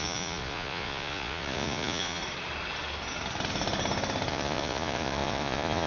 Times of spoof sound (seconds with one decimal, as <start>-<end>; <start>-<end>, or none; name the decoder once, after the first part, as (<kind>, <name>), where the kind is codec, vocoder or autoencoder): 0.0-2.2 (vocoder, Vocos); 4.3-5.9